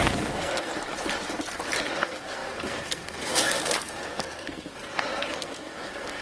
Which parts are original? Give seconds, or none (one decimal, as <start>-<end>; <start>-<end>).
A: 0.7-1.9